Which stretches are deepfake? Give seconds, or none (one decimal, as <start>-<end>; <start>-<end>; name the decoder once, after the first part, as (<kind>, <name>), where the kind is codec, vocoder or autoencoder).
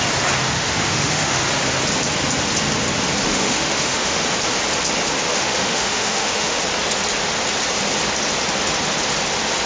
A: 0.4-1.4 (autoencoder, DAC-VAE); 3.3-4.2; 5.3-6.6